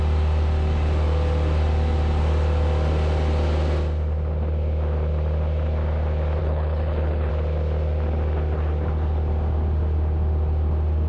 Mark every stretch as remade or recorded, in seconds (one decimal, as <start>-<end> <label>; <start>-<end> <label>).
0.0-6.4 recorded; 6.4-7.3 remade; 7.3-11.1 recorded